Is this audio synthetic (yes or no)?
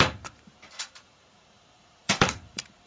yes